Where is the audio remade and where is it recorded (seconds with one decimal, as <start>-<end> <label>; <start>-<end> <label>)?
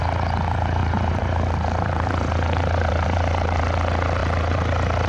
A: 0.0-0.8 recorded; 0.8-3.6 remade; 3.6-4.2 recorded; 4.2-5.1 remade